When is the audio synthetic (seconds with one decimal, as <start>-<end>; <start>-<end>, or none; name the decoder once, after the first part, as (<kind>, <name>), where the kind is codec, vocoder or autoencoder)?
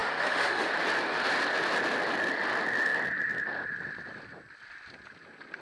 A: 0.0-0.7 (autoencoder, DAC-VAE)